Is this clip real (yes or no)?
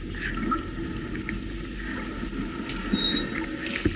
yes